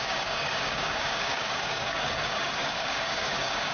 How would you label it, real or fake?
fake